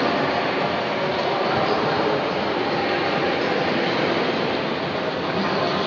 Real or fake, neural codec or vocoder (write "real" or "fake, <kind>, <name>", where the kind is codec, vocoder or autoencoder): real